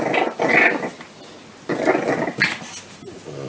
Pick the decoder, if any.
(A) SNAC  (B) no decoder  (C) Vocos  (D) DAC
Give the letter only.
B